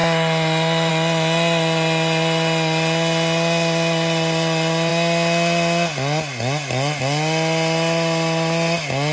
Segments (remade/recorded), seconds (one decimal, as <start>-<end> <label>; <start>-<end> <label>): 0.0-9.1 recorded